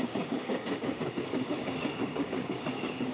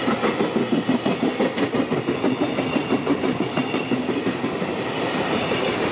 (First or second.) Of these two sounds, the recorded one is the second